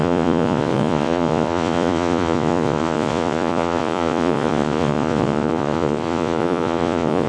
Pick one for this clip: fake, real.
fake